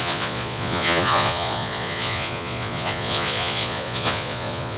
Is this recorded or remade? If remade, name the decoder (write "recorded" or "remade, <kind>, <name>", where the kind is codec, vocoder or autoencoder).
remade, vocoder, Vocos